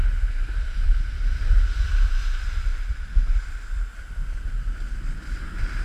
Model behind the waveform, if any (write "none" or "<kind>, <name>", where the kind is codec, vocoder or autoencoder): none